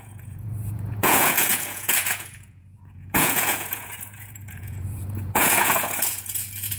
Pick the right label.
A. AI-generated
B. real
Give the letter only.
A